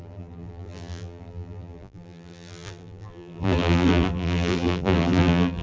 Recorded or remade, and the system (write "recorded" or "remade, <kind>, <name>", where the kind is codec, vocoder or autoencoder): remade, vocoder, BigVGAN v2